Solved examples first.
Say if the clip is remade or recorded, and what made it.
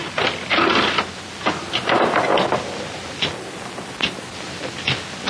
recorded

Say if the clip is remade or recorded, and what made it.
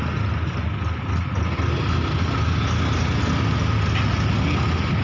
recorded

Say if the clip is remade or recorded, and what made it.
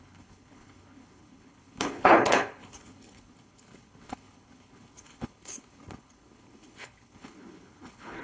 remade, codec, HILCodec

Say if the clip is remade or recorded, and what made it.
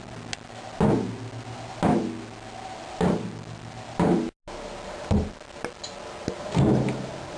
recorded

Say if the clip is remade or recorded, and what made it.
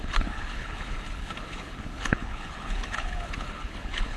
remade, codec, HILCodec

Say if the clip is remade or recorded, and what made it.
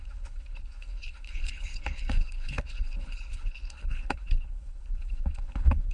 remade, codec, HILCodec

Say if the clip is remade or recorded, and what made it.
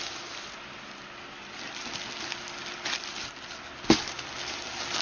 recorded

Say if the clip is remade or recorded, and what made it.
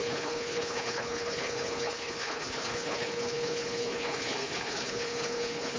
remade, codec, HILCodec